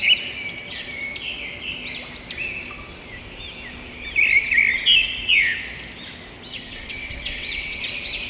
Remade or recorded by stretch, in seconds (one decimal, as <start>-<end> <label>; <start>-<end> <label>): 0.0-6.5 recorded; 6.5-7.8 remade; 7.8-8.3 recorded